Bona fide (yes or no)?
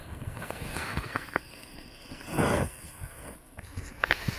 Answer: no